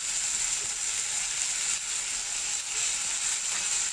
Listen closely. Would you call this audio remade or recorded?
recorded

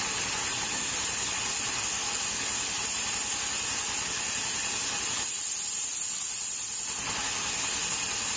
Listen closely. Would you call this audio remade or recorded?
recorded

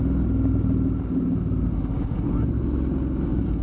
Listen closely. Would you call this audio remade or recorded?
recorded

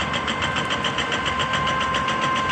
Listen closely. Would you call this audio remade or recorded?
recorded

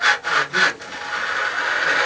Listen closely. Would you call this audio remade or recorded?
recorded